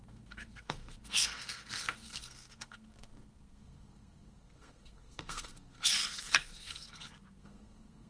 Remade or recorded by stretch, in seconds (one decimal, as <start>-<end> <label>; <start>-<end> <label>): 0.0-8.1 remade